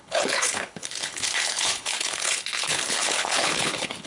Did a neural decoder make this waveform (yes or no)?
yes